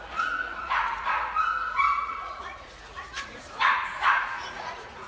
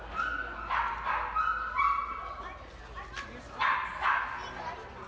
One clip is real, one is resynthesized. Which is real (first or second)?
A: second